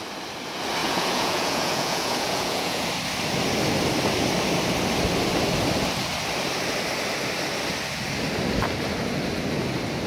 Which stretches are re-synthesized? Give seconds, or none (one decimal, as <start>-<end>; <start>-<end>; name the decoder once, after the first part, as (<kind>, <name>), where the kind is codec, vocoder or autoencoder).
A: 0.8-2.9 (vocoder, Vocos)